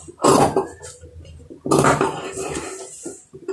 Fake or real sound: real